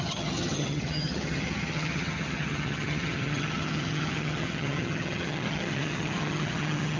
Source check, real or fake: fake